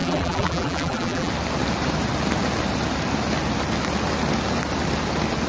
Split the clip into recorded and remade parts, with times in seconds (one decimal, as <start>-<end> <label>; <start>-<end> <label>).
0.0-1.3 remade; 1.3-5.5 recorded